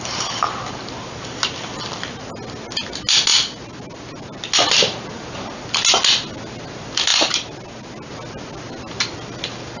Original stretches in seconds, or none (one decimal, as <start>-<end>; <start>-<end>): 0.0-9.8